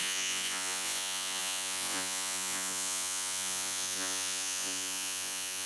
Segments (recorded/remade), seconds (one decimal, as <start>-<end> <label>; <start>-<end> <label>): 0.0-5.7 remade